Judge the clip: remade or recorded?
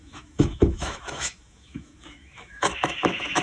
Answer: remade